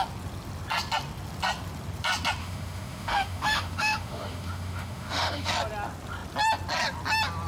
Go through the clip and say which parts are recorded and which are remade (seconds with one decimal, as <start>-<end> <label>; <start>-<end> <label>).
0.0-2.4 recorded; 2.4-5.5 remade; 5.5-7.5 recorded